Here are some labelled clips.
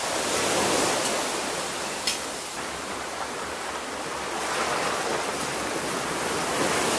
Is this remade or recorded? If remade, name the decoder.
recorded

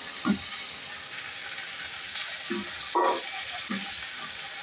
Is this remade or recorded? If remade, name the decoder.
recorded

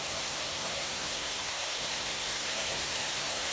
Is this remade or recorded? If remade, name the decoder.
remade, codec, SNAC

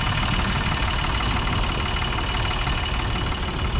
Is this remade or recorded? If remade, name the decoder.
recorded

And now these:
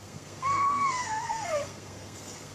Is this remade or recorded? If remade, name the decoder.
remade, codec, SNAC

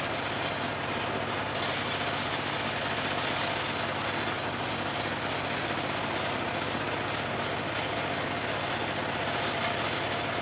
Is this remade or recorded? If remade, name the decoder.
recorded